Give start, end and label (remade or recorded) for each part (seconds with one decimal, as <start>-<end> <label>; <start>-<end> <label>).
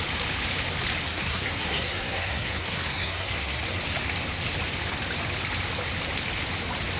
0.0-1.1 recorded; 1.1-3.6 remade; 3.6-7.0 recorded